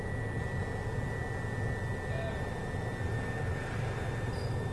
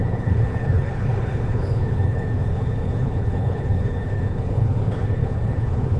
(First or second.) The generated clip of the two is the second